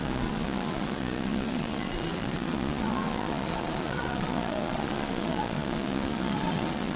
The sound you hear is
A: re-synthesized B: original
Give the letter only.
A